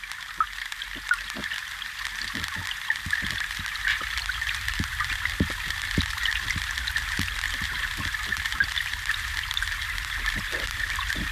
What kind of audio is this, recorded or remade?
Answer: recorded